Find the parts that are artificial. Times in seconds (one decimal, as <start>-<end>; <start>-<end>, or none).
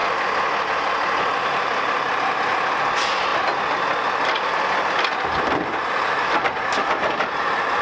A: none